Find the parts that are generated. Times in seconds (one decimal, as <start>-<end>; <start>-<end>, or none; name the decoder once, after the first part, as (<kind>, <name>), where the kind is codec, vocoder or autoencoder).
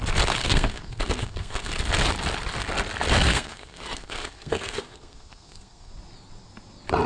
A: 0.4-1.7 (codec, SNAC); 3.3-5.9